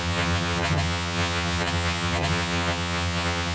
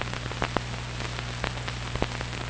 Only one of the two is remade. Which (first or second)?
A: first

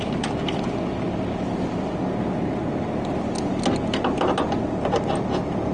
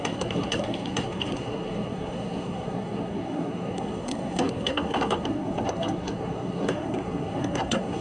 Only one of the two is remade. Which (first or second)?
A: second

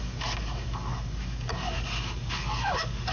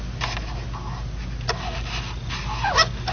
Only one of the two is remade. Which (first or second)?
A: first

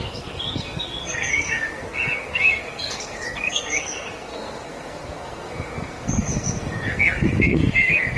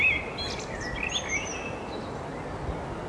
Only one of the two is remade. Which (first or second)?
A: first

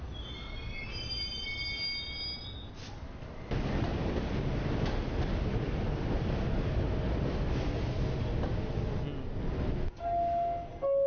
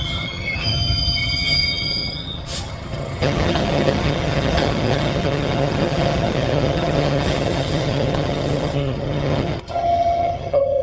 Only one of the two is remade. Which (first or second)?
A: second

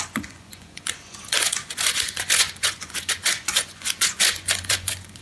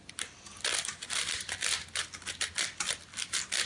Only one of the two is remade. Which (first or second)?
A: first